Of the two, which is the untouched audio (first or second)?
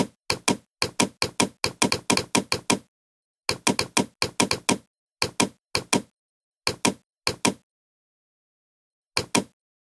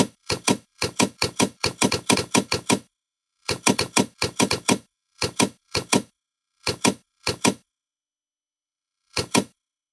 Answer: first